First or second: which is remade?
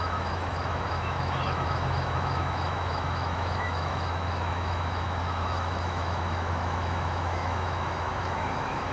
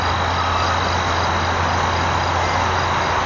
first